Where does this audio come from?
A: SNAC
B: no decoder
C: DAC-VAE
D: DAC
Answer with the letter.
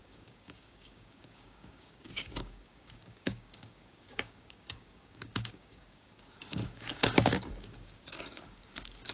D